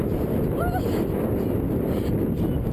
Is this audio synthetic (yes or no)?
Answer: yes